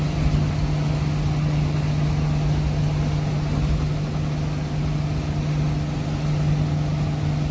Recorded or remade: recorded